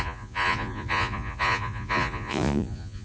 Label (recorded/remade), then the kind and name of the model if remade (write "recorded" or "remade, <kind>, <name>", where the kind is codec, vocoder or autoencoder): remade, vocoder, Vocos